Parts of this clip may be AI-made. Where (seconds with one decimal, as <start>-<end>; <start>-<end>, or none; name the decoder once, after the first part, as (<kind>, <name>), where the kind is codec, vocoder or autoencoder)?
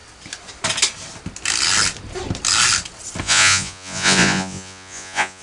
3.2-5.4 (vocoder, Vocos)